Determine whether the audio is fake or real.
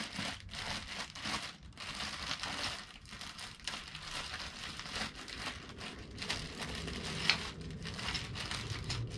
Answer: real